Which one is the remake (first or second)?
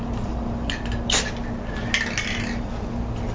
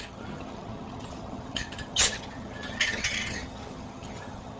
second